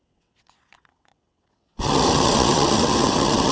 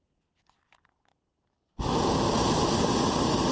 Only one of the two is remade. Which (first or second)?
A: first